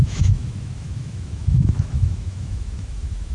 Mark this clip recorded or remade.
remade